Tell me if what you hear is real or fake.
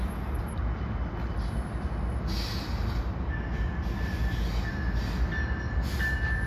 real